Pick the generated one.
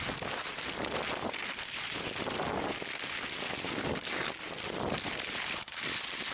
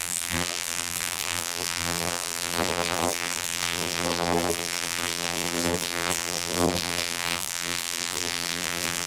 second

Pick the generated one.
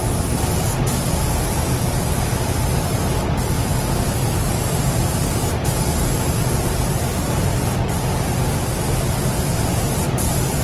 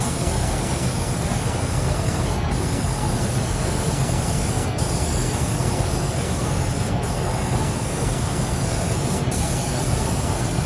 second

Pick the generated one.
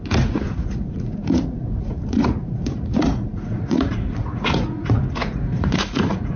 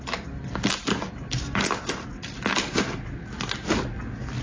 first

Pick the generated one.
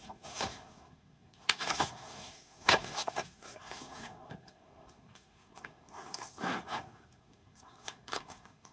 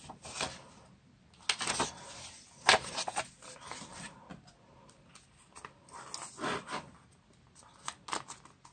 first